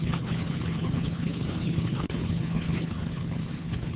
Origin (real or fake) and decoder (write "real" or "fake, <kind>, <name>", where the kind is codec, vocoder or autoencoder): fake, codec, HILCodec